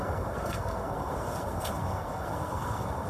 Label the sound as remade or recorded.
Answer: remade